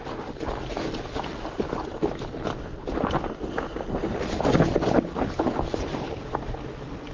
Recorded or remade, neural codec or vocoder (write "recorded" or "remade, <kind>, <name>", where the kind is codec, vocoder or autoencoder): recorded